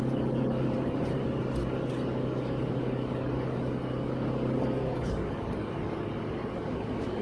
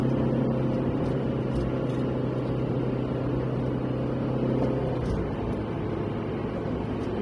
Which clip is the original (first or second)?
second